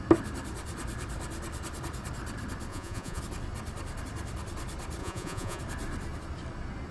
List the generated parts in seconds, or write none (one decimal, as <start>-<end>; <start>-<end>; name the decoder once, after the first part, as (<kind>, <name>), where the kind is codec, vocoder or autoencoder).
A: 2.7-3.2 (vocoder, Vocos); 5.0-5.6

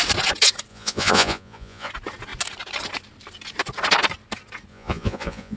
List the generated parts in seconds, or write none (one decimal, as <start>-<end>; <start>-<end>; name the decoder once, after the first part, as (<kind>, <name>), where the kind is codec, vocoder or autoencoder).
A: 0.7-1.9 (vocoder, Vocos); 4.7-5.6

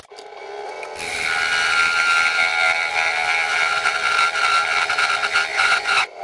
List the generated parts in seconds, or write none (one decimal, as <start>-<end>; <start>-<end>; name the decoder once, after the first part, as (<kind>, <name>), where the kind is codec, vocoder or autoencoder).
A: 5.5-6.2 (vocoder, Vocos)

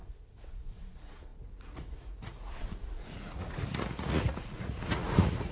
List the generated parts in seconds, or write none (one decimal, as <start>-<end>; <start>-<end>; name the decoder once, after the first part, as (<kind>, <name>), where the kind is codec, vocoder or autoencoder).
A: 0.0-5.5 (vocoder, Vocos)

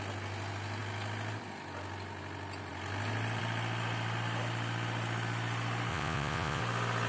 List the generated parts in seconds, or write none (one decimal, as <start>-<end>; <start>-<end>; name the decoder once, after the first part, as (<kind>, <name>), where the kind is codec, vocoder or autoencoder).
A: 5.9-6.6 (vocoder, Vocos)